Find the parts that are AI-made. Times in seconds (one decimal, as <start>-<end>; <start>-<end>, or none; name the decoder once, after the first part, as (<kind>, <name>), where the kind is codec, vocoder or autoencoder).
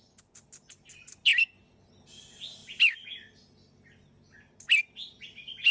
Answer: none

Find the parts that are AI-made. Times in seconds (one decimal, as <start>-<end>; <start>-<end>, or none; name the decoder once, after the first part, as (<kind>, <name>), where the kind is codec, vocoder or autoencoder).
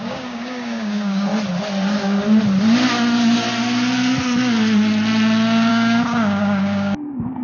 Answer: 0.0-1.3 (codec, DAC); 5.7-7.4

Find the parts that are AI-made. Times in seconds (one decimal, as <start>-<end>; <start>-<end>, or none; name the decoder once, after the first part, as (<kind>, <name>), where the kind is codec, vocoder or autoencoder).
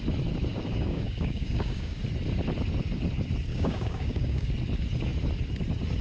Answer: 0.5-2.0 (codec, DAC); 3.5-4.5